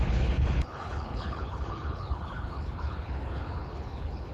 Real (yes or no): no